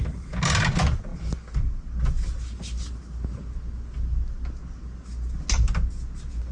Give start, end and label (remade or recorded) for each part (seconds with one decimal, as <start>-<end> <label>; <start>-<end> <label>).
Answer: 0.0-6.5 recorded